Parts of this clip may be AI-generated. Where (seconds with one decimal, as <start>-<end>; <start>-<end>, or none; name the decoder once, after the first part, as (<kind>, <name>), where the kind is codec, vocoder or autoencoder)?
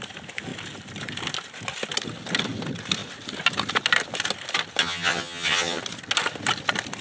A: 4.8-5.8 (vocoder, HiFi-GAN)